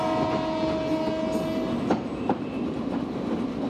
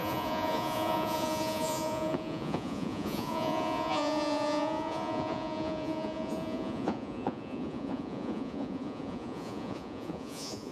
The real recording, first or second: first